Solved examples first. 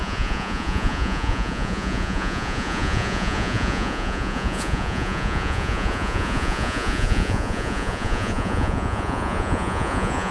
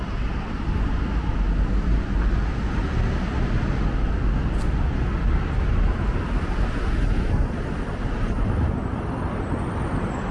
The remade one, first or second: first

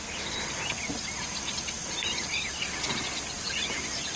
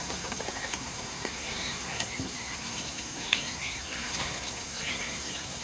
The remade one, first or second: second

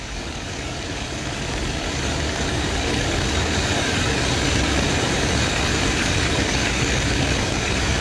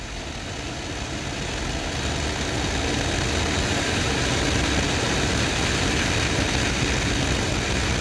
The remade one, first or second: first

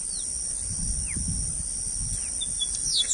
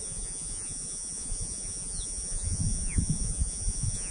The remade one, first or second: second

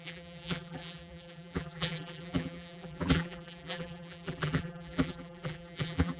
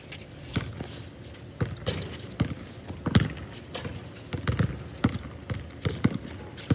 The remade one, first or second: first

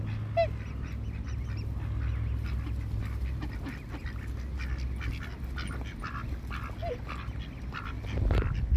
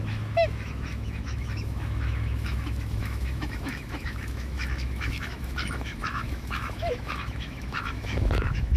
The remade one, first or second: second